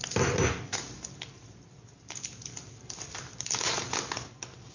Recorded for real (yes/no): yes